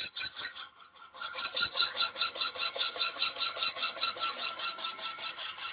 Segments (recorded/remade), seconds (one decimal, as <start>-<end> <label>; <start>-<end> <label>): 0.0-4.7 remade; 4.7-5.3 recorded; 5.3-5.7 remade